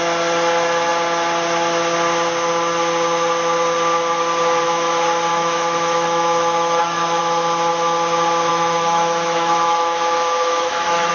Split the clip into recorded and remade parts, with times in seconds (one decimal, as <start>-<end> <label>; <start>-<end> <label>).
0.0-5.3 recorded; 5.3-7.2 remade; 7.2-8.5 recorded; 8.5-11.1 remade